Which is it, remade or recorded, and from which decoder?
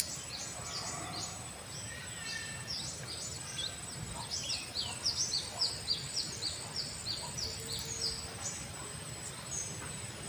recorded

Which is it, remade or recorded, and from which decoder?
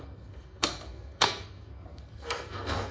remade, codec, SNAC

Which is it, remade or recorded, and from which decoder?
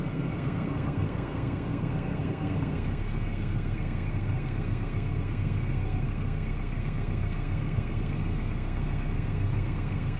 remade, codec, SNAC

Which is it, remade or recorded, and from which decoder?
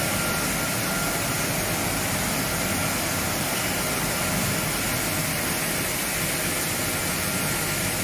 recorded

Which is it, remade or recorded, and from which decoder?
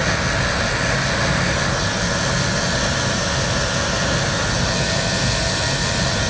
recorded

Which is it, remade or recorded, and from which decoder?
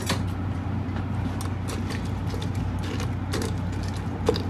recorded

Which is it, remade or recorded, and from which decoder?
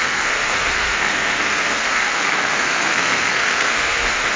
remade, codec, SNAC